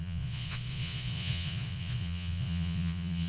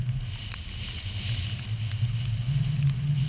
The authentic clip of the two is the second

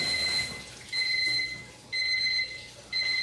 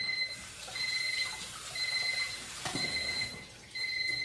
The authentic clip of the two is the first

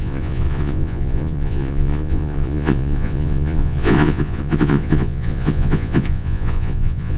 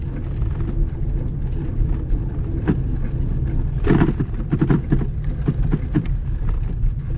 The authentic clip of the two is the second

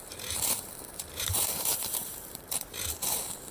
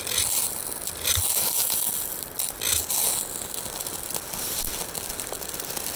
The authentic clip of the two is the second